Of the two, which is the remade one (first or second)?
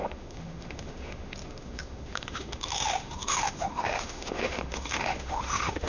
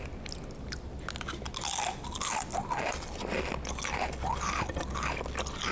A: first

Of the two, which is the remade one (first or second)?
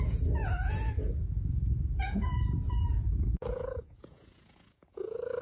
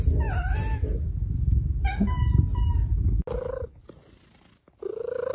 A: first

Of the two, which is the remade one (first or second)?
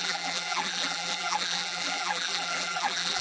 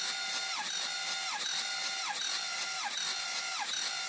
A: first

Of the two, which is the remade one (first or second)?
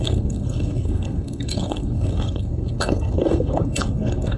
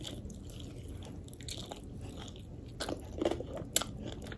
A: first